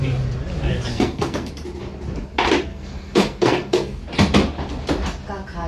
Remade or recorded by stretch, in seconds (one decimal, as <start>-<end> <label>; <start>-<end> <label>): 0.0-0.9 recorded; 0.9-1.5 remade; 1.5-2.7 recorded; 2.7-4.0 remade; 4.0-5.7 recorded